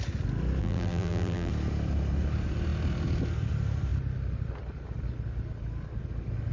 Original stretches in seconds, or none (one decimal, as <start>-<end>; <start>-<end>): 0.0-0.6; 1.5-6.5